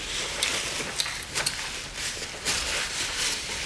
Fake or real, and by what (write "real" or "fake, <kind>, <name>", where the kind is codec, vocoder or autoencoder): real